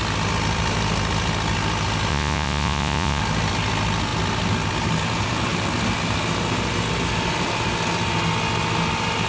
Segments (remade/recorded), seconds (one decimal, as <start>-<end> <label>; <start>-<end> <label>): 0.0-2.1 recorded; 2.1-3.2 remade; 3.2-9.3 recorded